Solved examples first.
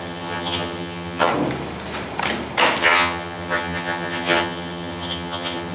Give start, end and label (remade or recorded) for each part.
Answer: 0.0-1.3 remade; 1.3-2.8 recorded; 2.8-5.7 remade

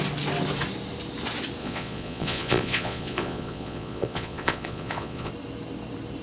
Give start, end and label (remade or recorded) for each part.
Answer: 0.0-1.6 recorded; 1.6-5.3 remade; 5.3-6.2 recorded

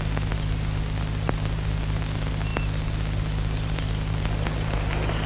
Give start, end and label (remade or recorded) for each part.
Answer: 0.0-5.3 recorded

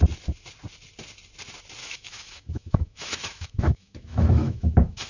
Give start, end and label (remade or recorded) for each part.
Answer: 0.0-1.8 recorded; 1.8-5.1 remade